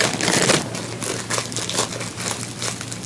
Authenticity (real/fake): real